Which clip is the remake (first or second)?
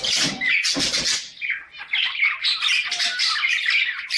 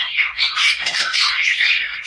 second